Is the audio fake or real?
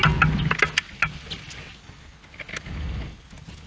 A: real